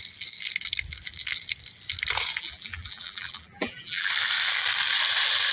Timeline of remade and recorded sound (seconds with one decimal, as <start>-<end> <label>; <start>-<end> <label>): 0.0-2.4 recorded; 2.4-4.1 remade; 4.1-5.5 recorded